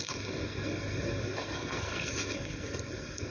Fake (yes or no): yes